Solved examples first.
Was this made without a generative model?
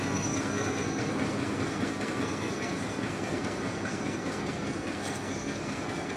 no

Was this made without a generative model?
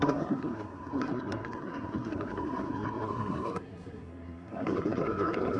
no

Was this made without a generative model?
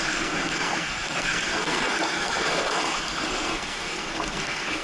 no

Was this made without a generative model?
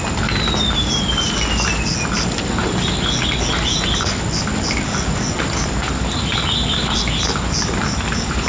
yes